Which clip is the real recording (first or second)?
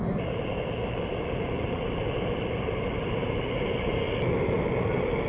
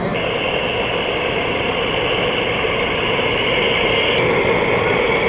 second